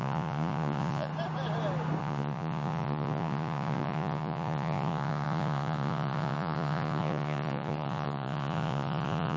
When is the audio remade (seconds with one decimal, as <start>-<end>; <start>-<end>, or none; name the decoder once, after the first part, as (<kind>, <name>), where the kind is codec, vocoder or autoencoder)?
0.0-1.1 (vocoder, Vocos); 2.0-9.4